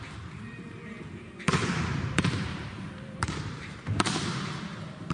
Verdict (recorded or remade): remade